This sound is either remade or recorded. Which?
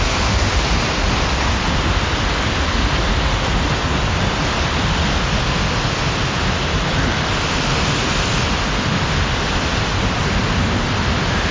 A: recorded